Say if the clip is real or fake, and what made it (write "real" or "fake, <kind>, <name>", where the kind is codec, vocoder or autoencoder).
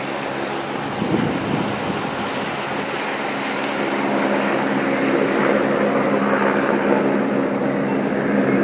real